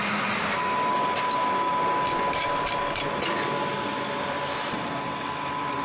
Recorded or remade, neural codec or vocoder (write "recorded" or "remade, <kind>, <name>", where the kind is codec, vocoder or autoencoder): recorded